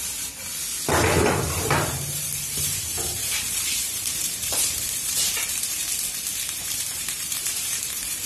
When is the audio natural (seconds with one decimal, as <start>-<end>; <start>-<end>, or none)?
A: 0.0-1.0; 5.9-6.5